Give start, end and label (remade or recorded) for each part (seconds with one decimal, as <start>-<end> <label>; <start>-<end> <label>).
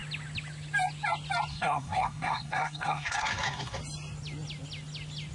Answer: 0.0-1.5 recorded; 1.5-3.8 remade; 3.8-5.3 recorded